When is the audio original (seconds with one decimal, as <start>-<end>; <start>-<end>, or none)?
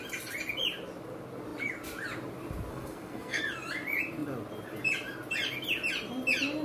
0.0-2.7; 3.4-6.6